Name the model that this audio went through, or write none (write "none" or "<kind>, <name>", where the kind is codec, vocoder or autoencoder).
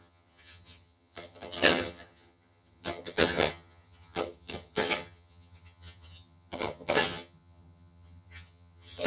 vocoder, HiFi-GAN